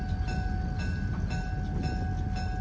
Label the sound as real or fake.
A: real